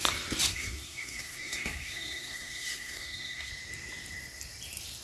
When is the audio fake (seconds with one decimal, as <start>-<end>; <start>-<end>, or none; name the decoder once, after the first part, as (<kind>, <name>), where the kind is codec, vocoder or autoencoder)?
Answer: 0.5-3.5 (codec, SNAC)